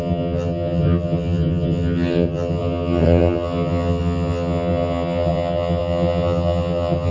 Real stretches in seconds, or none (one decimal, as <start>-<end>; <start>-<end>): none